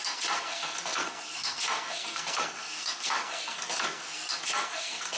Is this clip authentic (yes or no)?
no